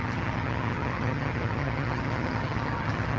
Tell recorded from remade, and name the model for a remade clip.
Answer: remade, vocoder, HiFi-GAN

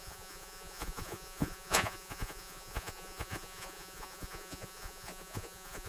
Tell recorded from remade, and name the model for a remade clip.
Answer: remade, vocoder, Vocos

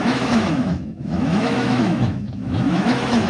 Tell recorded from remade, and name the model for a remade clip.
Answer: remade, autoencoder, DAC-VAE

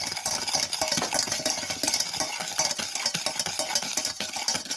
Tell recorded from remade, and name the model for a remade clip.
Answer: recorded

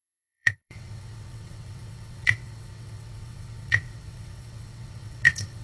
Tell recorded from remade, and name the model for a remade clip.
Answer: remade, vocoder, WaveNeXt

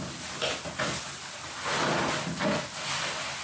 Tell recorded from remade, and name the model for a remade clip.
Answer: recorded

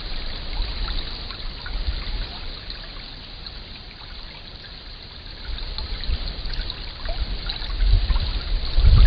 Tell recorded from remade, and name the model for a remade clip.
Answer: recorded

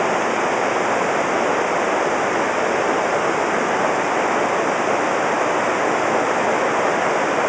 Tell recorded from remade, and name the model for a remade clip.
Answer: recorded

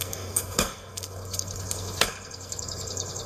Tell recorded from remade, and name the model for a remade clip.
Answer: remade, codec, SNAC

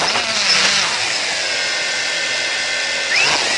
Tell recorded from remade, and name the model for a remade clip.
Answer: recorded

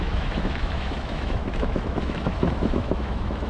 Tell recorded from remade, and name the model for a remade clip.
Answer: remade, autoencoder, DAC-VAE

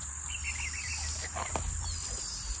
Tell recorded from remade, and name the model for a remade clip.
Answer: recorded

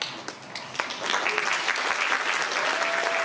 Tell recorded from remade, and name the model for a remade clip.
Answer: recorded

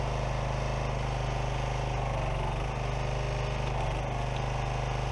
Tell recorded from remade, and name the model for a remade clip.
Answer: recorded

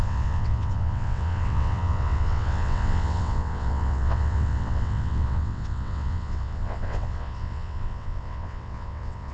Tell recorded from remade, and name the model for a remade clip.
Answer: remade, vocoder, WaveNeXt